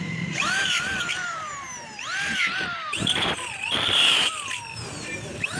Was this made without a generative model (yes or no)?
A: no